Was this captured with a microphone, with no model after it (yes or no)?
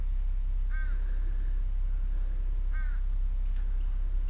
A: yes